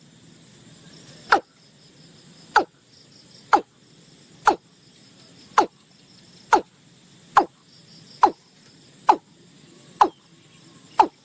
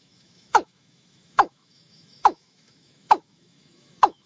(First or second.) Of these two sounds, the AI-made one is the second